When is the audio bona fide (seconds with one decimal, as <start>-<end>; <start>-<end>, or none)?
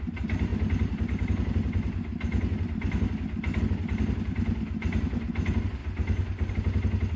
0.0-7.2